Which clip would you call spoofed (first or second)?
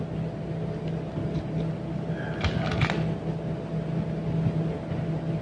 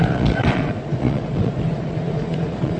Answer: second